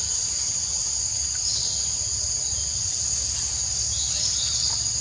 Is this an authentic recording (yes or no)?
yes